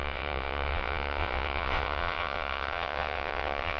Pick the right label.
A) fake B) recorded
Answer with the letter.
A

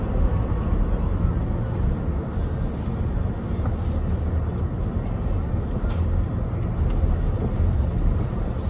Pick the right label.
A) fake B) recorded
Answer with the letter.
B